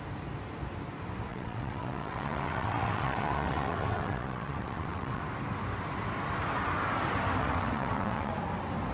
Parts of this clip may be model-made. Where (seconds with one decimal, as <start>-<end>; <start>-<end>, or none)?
1.3-5.2; 7.4-8.3